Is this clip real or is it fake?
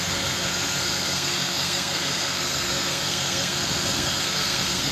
fake